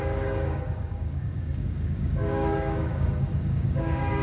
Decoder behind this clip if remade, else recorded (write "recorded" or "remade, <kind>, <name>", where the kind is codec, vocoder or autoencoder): remade, codec, DAC